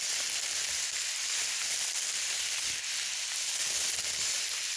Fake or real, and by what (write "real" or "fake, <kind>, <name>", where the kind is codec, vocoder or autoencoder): real